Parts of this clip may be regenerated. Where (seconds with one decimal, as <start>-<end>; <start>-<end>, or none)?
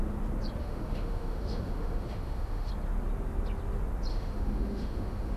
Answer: 0.6-2.7; 4.1-5.4